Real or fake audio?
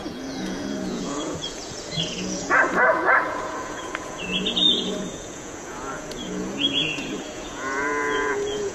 fake